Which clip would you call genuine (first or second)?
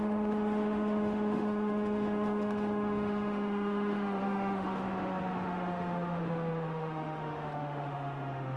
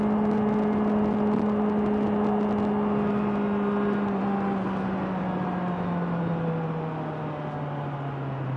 second